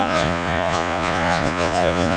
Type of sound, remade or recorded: remade